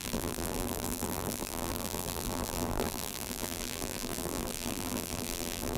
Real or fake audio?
fake